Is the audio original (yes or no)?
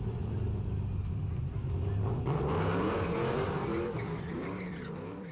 no